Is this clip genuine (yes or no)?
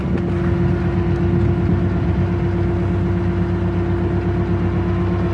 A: yes